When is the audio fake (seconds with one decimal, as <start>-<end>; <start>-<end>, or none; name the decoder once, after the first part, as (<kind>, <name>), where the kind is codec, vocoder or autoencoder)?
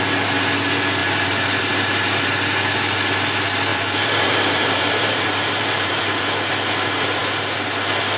1.0-1.6 (vocoder, BigVGAN v2); 3.7-6.2